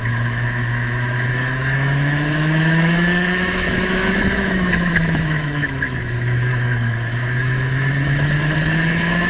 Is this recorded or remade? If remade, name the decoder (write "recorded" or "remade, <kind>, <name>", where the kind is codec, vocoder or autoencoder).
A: remade, autoencoder, DAC-VAE